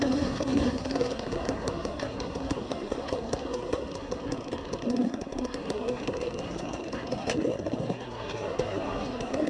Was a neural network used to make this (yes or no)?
yes